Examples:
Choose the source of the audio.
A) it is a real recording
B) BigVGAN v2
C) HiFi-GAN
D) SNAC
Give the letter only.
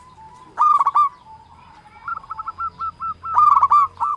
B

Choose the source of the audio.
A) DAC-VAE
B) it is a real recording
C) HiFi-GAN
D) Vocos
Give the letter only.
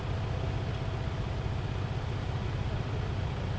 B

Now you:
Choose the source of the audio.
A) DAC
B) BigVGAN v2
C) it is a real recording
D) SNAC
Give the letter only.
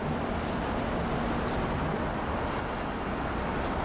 C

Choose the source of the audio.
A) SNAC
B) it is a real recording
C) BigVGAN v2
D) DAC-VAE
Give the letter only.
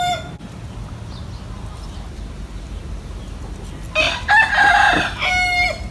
B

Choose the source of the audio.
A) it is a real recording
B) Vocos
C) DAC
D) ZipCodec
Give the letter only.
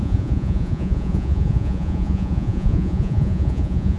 B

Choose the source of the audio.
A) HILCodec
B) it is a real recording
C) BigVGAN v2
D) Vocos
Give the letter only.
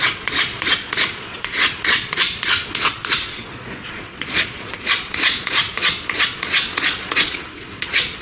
D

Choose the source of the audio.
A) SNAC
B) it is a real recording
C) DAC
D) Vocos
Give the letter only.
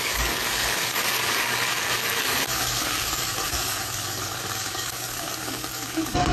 C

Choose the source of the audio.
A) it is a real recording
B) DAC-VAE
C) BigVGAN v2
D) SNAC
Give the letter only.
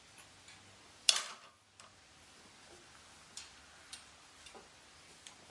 A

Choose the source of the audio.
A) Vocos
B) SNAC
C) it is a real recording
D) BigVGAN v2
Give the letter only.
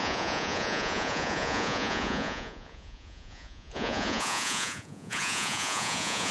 A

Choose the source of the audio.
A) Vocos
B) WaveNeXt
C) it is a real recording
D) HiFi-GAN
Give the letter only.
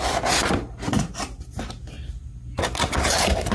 C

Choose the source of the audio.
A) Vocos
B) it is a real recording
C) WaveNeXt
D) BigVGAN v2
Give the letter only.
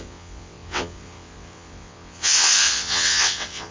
C